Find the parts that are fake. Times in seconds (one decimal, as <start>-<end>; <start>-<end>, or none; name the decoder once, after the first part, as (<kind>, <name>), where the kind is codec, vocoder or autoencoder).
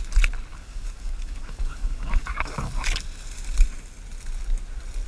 0.5-2.7 (codec, DAC)